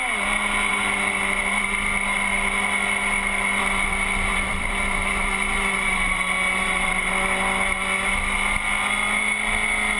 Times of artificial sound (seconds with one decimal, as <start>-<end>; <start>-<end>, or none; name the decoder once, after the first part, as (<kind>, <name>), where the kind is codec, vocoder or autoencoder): 4.3-6.9 (vocoder, BigVGAN v2)